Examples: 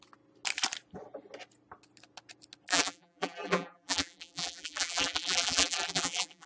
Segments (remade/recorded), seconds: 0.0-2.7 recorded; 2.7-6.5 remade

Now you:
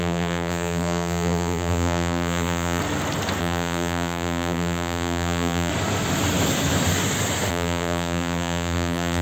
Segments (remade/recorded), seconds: 0.0-2.8 remade; 2.8-3.4 recorded; 3.4-5.7 remade; 5.7-7.5 recorded; 7.5-9.2 remade

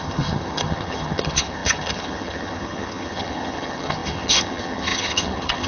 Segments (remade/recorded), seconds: 0.0-5.7 remade

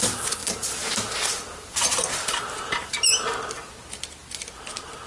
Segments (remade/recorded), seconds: 0.0-0.4 recorded; 0.4-2.9 remade; 2.9-5.1 recorded

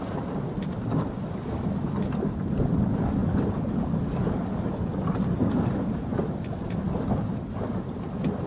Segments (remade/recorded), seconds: 0.0-8.5 recorded

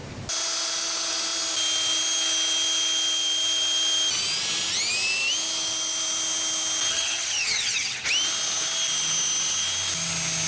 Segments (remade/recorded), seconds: 0.0-6.9 recorded; 6.9-8.1 remade; 8.1-10.5 recorded

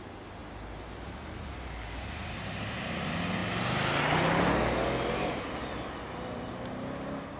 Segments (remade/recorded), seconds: 0.0-7.4 recorded